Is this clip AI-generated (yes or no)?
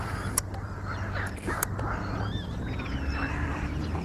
yes